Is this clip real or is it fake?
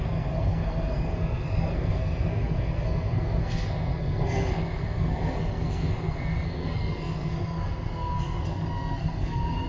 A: fake